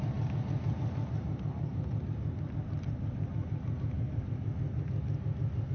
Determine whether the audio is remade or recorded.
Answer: recorded